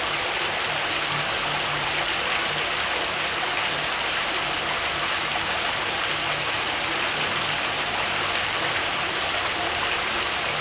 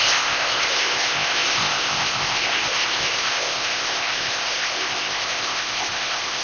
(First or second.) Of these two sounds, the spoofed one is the second